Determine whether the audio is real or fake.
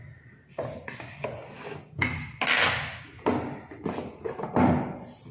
real